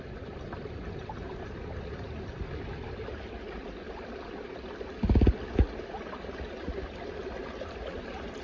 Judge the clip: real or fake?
real